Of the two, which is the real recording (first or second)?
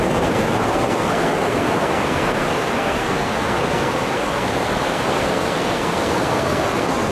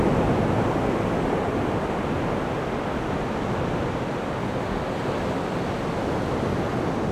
second